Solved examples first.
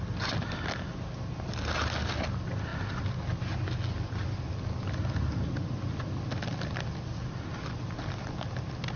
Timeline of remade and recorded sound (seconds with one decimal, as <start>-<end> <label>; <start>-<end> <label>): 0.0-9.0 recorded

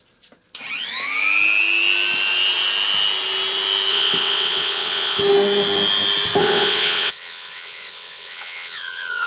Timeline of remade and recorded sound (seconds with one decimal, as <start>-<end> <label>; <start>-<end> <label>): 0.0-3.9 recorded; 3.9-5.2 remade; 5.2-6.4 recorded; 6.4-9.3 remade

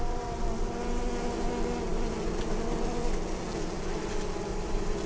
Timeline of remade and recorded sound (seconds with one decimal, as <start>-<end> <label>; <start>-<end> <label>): 0.0-4.5 recorded; 4.5-5.1 remade